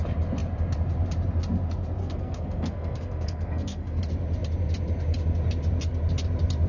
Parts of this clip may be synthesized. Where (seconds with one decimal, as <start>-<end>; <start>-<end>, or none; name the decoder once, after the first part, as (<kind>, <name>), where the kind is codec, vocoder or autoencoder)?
2.0-4.0 (codec, SNAC)